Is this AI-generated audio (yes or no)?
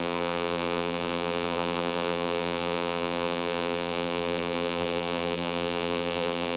yes